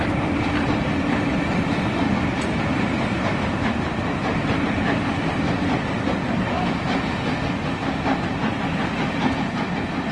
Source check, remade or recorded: recorded